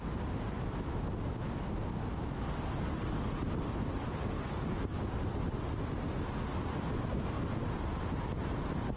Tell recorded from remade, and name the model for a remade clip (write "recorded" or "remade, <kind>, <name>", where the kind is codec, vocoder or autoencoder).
recorded